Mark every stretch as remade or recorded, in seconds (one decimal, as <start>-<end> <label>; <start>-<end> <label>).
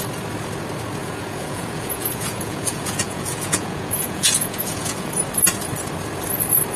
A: 0.0-1.0 recorded; 1.0-5.1 remade; 5.1-6.8 recorded